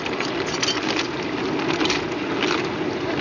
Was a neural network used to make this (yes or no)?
no